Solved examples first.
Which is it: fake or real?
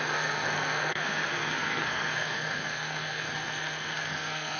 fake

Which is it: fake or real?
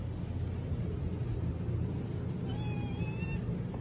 real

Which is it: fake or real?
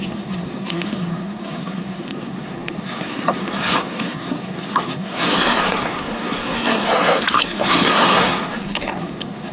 fake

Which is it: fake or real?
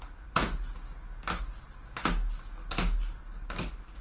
real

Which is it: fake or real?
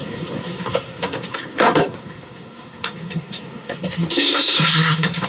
fake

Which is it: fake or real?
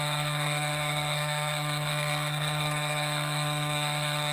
fake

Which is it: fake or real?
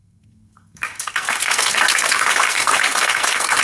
fake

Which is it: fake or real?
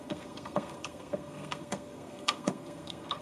fake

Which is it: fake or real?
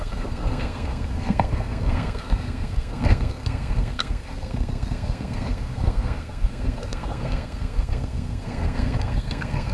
fake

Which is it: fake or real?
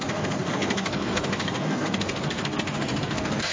fake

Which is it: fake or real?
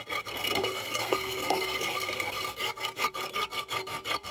fake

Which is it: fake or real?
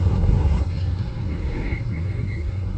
fake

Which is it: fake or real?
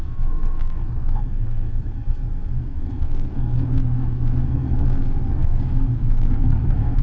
fake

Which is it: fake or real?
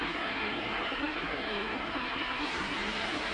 fake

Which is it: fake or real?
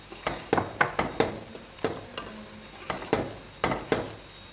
real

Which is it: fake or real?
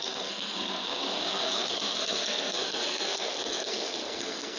fake